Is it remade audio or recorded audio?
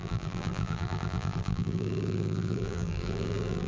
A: remade